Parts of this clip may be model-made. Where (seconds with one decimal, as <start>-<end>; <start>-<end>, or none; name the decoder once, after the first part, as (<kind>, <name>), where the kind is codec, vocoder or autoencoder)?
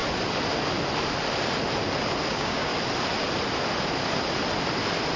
2.3-2.7 (codec, DAC)